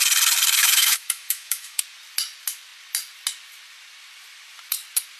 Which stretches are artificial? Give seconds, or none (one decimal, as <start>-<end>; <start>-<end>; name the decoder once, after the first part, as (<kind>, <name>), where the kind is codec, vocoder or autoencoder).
0.6-1.8 (autoencoder, DAC-VAE)